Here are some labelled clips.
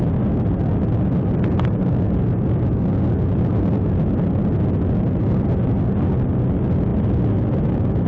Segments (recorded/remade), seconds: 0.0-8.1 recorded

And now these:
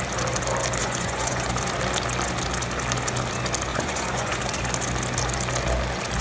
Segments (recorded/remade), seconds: 0.0-0.8 recorded; 0.8-1.5 remade; 1.5-3.7 recorded; 3.7-4.4 remade; 4.4-6.2 recorded

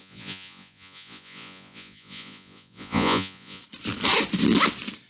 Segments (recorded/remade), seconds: 0.0-3.6 remade; 3.6-5.1 recorded

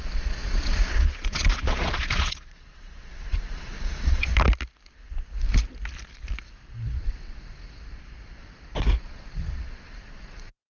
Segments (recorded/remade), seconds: 0.0-4.3 remade; 4.3-9.0 recorded; 9.0-10.7 remade

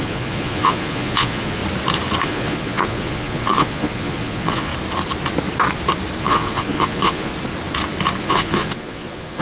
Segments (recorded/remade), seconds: 0.0-1.6 remade; 1.6-2.2 recorded; 2.2-4.7 remade; 4.7-6.2 recorded; 6.2-7.3 remade; 7.3-8.2 recorded; 8.2-9.4 remade

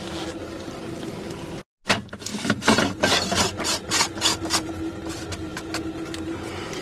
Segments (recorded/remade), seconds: 0.0-6.8 recorded

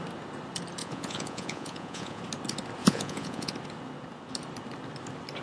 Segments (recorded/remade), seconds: 0.0-0.8 recorded; 0.8-2.2 remade; 2.2-2.8 recorded; 2.8-3.5 remade; 3.5-5.4 recorded